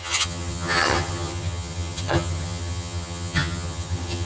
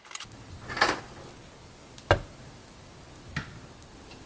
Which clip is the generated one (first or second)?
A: first